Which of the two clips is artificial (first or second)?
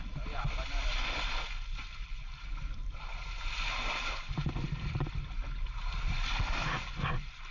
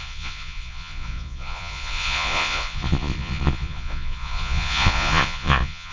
second